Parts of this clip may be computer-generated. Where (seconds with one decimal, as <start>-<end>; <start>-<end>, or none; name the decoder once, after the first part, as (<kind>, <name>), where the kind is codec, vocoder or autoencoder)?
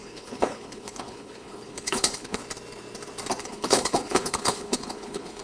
0.0-2.4 (codec, HILCodec); 3.4-5.4